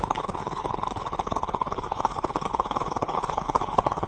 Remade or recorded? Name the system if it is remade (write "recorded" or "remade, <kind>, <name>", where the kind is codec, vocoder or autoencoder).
remade, codec, HILCodec